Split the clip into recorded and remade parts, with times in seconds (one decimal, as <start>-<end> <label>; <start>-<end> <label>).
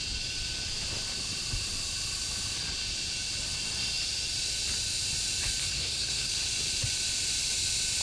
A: 0.0-5.6 recorded; 5.6-6.3 remade; 6.3-8.0 recorded